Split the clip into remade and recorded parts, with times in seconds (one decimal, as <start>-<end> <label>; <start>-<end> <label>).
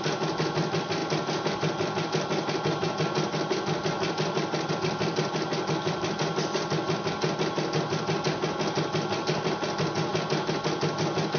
0.0-11.4 recorded